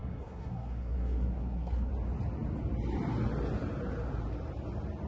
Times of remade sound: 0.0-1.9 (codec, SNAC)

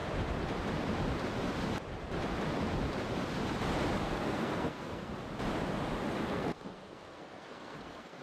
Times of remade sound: 4.0-5.1 (codec, SNAC); 6.3-8.2